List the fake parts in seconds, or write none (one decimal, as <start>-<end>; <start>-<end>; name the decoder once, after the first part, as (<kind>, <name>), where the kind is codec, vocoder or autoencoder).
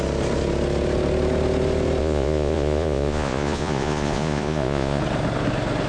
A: 2.0-5.0 (vocoder, Vocos)